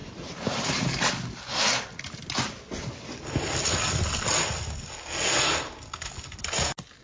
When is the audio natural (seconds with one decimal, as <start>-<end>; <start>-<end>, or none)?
1.1-7.0